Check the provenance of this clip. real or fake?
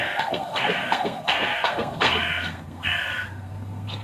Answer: fake